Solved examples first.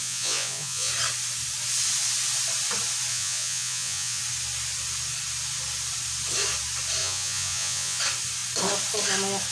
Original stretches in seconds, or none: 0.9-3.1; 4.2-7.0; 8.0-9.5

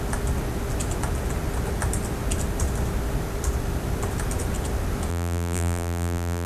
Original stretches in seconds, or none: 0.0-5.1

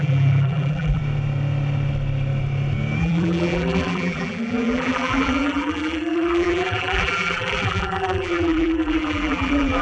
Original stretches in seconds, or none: 1.0-3.0

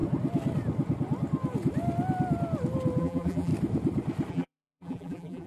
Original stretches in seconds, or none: 0.0-3.0; 3.5-4.3

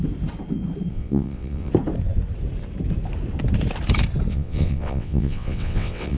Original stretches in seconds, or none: 0.0-0.9; 1.7-4.3

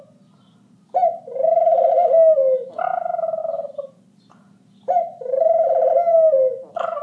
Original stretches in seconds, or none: 0.0-5.1; 6.1-7.0

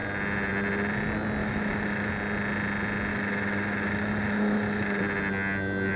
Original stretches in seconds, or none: 0.0-1.4; 2.1-3.1; 5.0-6.0

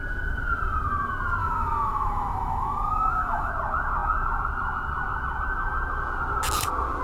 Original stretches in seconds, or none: 0.0-1.4; 3.5-7.0